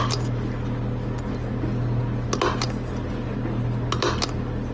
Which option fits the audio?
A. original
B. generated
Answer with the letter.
A